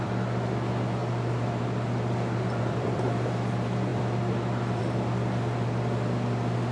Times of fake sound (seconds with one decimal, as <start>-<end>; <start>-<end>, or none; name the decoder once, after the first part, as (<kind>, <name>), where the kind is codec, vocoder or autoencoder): 0.0-6.7 (vocoder, BigVGAN v2)